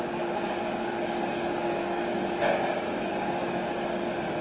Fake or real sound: fake